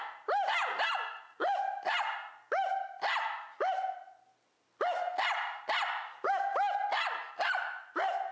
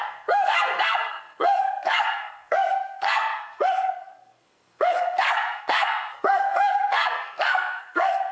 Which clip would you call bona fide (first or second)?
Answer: first